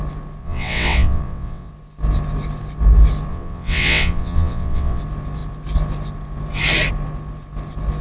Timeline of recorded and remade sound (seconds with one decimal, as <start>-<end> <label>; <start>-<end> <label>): 0.0-0.4 recorded; 0.4-1.7 remade; 1.7-3.3 recorded; 3.3-5.0 remade; 5.0-8.0 recorded